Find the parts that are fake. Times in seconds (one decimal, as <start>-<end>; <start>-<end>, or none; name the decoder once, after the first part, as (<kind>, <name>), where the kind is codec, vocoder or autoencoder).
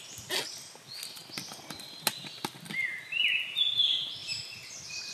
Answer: none